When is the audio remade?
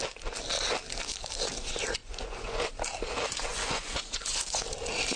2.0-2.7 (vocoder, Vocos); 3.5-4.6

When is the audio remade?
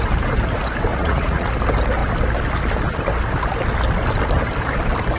0.9-1.5 (vocoder, Vocos)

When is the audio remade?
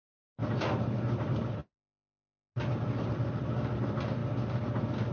none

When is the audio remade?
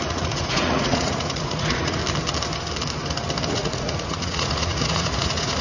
0.0-2.0 (vocoder, Vocos); 3.5-5.6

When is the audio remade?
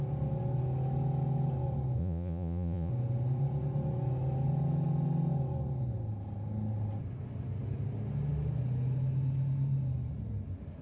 2.0-2.9 (vocoder, Vocos)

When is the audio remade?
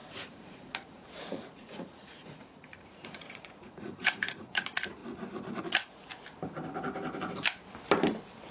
0.0-5.0 (vocoder, Vocos); 5.6-6.1